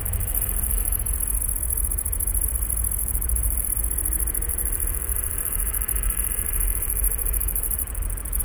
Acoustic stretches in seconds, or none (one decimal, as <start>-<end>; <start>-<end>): 1.0-3.0; 3.7-4.5